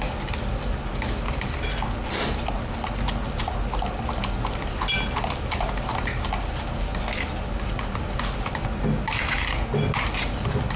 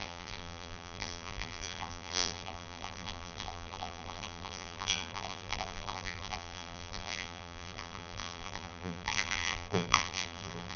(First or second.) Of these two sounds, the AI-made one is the second